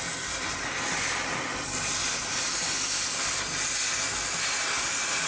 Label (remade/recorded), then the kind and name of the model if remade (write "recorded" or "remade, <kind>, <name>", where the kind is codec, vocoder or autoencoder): recorded